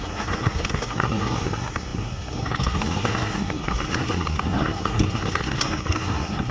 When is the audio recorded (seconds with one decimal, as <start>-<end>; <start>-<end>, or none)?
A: none

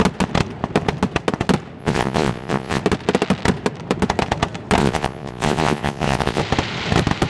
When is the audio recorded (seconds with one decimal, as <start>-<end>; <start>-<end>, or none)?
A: 0.0-1.8; 2.8-4.8; 6.4-7.3

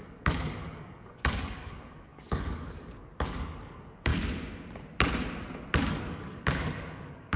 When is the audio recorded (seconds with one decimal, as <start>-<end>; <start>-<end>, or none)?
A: 4.1-5.9

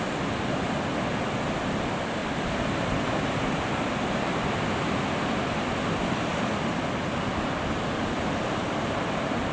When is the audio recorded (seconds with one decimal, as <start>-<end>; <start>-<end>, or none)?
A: 0.0-2.2; 2.9-6.3; 6.9-9.5